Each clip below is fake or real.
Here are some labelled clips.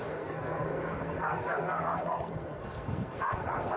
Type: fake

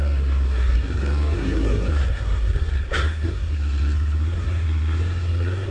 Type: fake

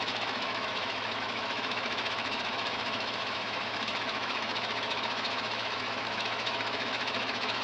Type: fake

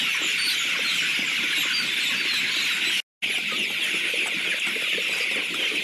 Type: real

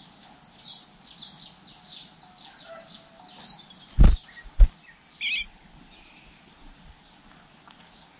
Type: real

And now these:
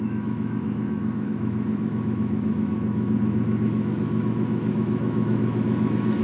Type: fake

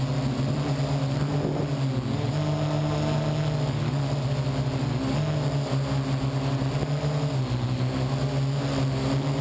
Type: real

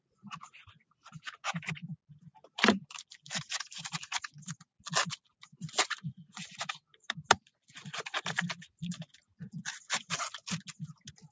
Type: real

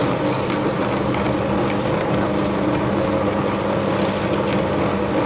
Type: real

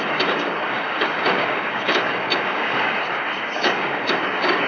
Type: fake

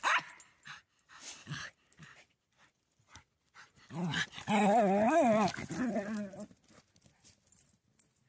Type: real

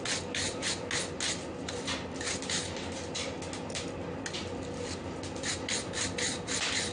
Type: real